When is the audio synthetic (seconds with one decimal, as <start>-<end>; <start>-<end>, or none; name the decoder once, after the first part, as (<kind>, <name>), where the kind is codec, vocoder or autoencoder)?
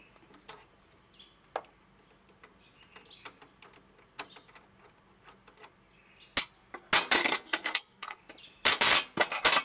7.2-8.2 (codec, SNAC)